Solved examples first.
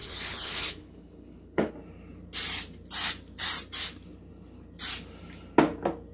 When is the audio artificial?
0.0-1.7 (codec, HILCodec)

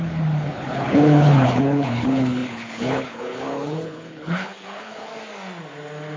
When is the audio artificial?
0.0-5.1 (codec, HILCodec)